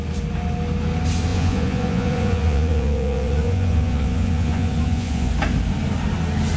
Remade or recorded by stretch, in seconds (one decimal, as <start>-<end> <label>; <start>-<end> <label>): 0.0-1.3 recorded; 1.3-5.3 remade; 5.3-6.6 recorded